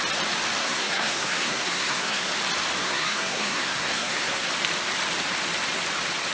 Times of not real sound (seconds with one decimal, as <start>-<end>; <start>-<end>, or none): 0.6-2.3; 2.8-4.5